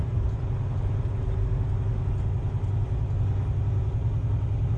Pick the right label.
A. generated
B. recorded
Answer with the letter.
B